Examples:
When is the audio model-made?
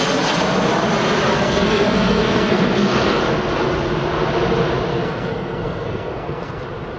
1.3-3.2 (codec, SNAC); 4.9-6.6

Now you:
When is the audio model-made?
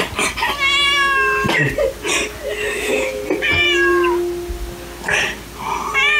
2.7-3.2 (autoencoder, DAC-VAE)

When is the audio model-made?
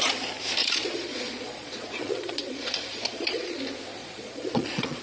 0.6-3.6 (vocoder, Vocos); 4.0-5.0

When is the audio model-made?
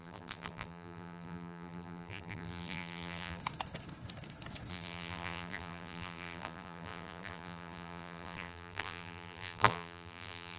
0.0-3.4 (vocoder, BigVGAN v2); 4.7-10.6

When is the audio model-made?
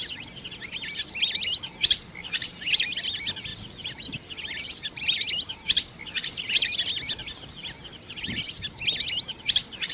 none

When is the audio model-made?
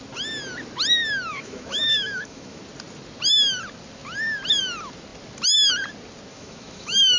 1.3-2.6 (autoencoder, DAC-VAE); 6.3-7.2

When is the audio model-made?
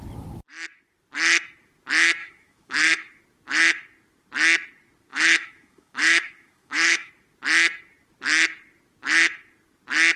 2.2-3.2 (autoencoder, DAC-VAE); 5.1-7.1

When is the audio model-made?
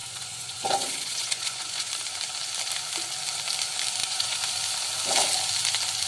0.0-1.9 (vocoder, Vocos); 4.0-4.5